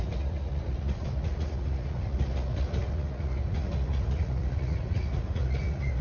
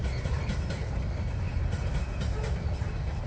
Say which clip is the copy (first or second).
first